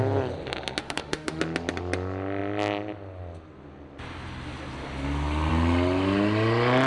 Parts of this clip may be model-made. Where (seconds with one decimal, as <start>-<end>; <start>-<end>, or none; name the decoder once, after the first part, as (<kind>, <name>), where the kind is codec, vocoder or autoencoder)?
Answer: 0.8-1.4 (autoencoder, DAC-VAE)